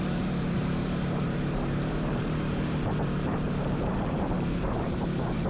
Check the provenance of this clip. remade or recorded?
remade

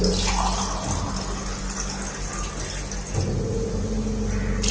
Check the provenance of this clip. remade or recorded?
recorded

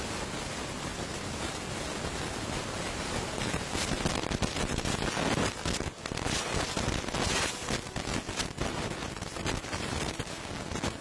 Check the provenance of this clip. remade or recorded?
recorded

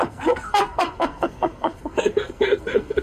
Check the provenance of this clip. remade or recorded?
remade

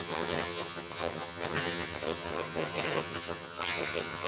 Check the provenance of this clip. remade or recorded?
remade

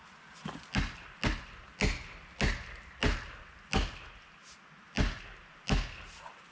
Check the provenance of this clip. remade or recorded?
recorded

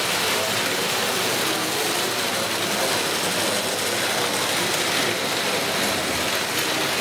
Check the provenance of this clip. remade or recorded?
recorded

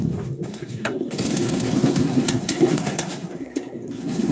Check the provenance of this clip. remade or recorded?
remade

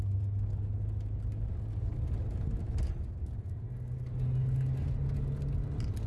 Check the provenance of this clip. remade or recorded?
recorded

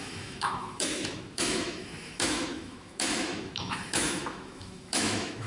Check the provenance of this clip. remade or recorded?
remade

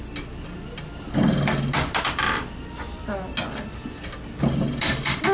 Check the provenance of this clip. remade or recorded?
recorded